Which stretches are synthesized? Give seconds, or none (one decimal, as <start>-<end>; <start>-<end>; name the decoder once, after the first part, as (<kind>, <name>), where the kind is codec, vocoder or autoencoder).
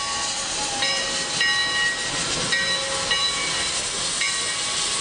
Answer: none